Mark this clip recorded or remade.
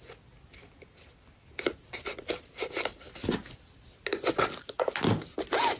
recorded